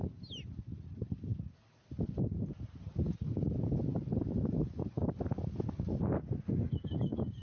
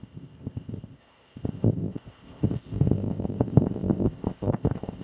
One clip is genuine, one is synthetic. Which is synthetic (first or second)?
second